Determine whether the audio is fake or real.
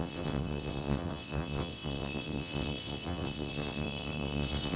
fake